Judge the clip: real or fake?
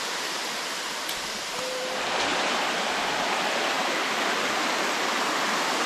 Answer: real